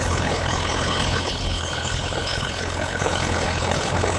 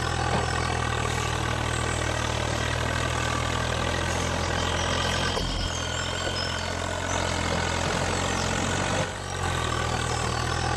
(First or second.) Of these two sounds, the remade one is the first